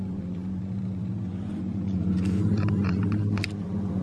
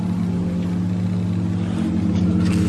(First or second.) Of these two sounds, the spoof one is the first